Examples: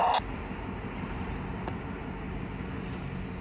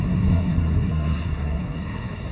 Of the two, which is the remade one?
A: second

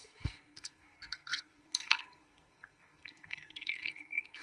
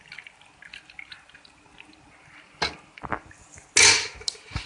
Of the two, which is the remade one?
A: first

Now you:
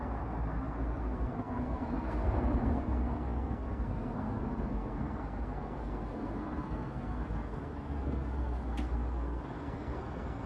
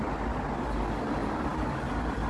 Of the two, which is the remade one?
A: first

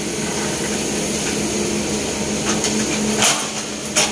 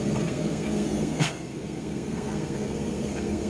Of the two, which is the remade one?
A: second